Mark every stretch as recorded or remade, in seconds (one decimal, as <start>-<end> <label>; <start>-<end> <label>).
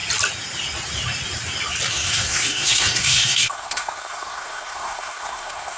0.0-1.9 recorded; 1.9-5.8 remade